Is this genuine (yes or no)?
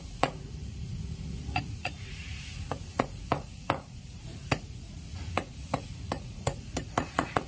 no